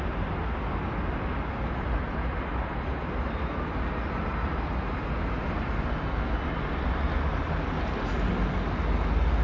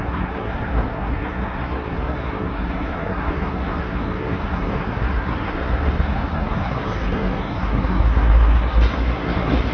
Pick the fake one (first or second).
second